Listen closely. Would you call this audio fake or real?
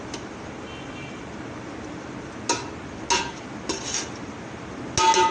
real